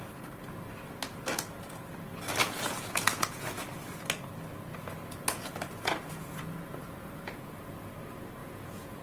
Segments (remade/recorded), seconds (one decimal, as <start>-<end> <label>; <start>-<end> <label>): 0.0-2.4 recorded; 2.4-3.5 remade; 3.5-4.7 recorded; 4.7-7.9 remade; 7.9-8.4 recorded; 8.4-9.0 remade

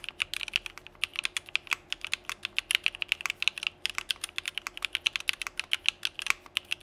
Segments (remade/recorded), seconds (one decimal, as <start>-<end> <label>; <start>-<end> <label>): 0.0-6.8 recorded

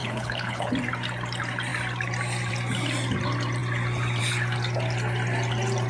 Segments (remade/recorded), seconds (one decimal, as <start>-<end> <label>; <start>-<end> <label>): 0.0-0.7 remade; 0.7-5.9 recorded

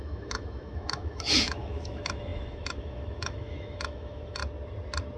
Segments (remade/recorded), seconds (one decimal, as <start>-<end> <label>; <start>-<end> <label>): 0.0-4.4 remade; 4.4-5.2 recorded

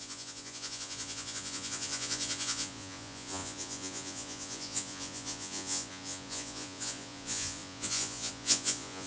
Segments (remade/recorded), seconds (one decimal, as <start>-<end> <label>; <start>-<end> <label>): 0.0-9.1 remade

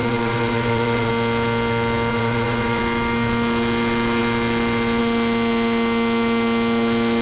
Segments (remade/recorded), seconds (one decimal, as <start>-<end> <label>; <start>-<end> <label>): 0.0-1.1 remade; 1.1-2.1 recorded; 2.1-2.8 remade; 2.8-7.2 recorded

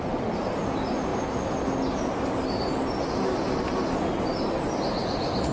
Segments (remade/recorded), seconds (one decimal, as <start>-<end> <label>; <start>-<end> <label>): 0.0-5.5 recorded